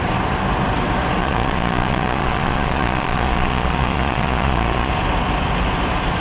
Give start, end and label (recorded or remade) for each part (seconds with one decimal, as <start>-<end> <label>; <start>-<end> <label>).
0.0-1.2 recorded; 1.2-4.9 remade; 4.9-6.2 recorded